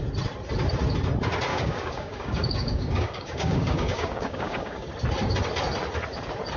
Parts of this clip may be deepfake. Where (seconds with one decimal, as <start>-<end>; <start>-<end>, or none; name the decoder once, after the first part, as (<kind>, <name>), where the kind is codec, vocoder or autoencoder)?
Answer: 1.5-4.9 (codec, DAC)